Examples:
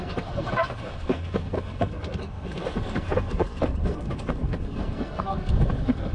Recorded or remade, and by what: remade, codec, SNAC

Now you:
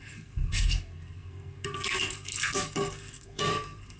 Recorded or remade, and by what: remade, codec, SNAC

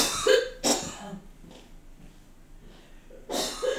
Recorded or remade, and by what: recorded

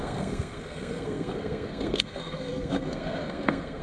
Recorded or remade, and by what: remade, codec, SNAC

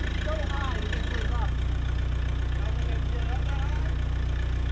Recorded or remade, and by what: recorded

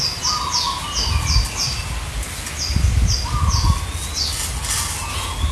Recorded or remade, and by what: recorded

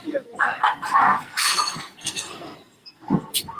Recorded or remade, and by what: remade, codec, SNAC